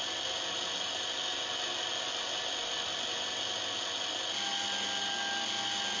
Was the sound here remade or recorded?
recorded